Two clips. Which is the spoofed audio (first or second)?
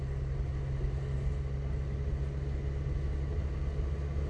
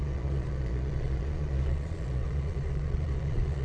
second